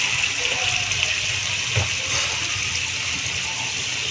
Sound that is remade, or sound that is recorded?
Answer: recorded